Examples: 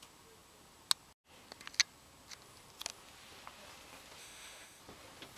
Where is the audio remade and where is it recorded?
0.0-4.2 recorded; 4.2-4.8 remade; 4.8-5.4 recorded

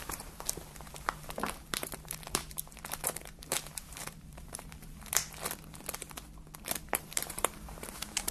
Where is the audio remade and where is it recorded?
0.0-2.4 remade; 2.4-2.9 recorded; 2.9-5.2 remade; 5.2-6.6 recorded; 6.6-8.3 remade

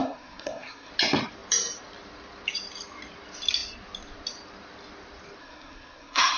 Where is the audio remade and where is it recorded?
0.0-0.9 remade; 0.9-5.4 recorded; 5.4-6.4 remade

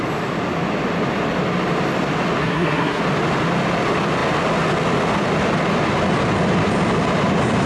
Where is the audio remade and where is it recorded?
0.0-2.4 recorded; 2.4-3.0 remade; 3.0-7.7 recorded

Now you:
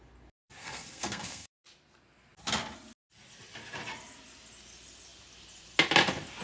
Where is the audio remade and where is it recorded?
0.0-0.6 recorded; 0.6-1.5 remade; 1.5-6.4 recorded

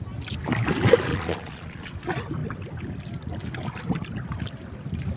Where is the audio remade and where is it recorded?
0.0-1.1 recorded; 1.1-1.9 remade; 1.9-5.2 recorded

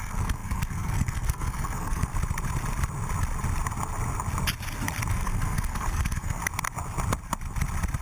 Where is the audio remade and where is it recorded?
0.0-2.1 remade; 2.1-5.1 recorded; 5.1-6.4 remade; 6.4-8.0 recorded

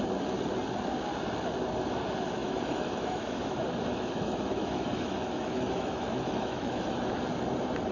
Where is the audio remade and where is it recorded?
0.0-2.4 recorded; 2.4-7.1 remade; 7.1-7.9 recorded